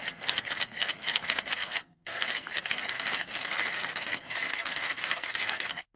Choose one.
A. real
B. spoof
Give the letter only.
B